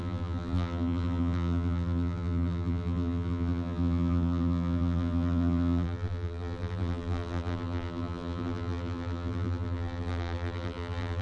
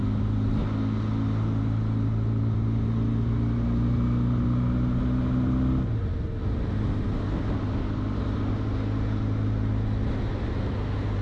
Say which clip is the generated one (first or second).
first